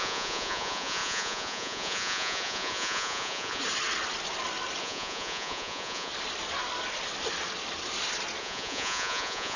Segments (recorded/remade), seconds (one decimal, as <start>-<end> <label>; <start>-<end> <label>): 0.0-3.6 remade; 3.6-4.8 recorded; 4.8-6.1 remade; 6.1-8.4 recorded; 8.4-9.6 remade